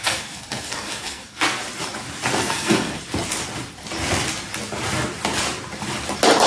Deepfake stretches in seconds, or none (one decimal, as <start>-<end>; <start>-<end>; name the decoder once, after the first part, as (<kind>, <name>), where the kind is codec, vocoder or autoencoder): 0.0-1.6 (codec, SNAC); 2.4-3.0

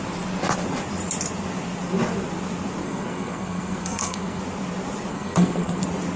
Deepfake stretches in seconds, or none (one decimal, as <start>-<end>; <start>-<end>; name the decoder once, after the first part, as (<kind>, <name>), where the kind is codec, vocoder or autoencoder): 2.8-4.4 (codec, SNAC); 5.1-5.8

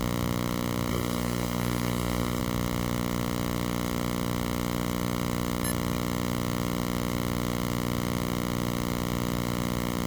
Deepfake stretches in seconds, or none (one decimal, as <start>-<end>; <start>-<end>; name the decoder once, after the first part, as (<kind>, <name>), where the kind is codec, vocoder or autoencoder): 0.9-2.4 (codec, SNAC)